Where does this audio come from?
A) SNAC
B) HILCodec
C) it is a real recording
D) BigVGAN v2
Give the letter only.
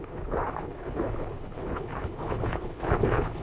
B